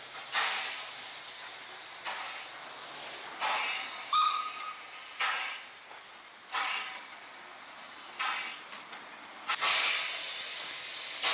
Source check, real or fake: real